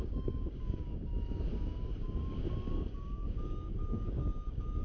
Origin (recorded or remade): remade